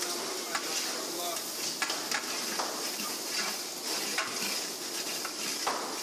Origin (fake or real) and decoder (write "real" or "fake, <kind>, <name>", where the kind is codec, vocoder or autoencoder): real